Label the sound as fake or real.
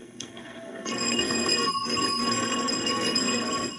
fake